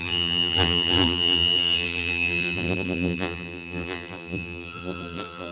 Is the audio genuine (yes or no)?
no